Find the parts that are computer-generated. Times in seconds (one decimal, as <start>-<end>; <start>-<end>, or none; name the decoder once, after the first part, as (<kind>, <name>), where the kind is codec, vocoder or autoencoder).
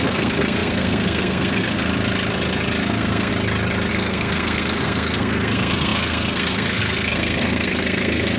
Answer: 0.0-1.9 (codec, SNAC); 2.8-3.3; 3.9-8.4